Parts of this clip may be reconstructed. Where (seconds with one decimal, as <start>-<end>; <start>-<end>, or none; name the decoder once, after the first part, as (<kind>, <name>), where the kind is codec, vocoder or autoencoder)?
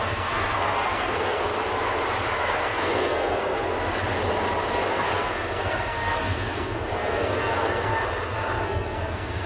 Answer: 0.0-1.5 (codec, SNAC); 2.4-3.7; 4.9-7.9; 8.6-9.5